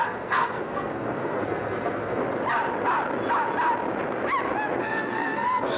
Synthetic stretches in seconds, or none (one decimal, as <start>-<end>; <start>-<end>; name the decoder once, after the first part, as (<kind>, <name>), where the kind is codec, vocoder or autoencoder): 0.0-2.2 (codec, SNAC); 4.8-5.8